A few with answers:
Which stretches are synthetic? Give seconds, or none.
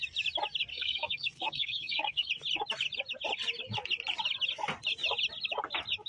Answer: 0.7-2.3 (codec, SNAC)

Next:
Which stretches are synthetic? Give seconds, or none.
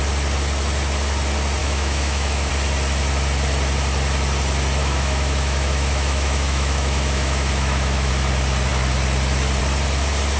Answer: 1.6-2.5 (autoencoder, DAC-VAE); 4.8-8.1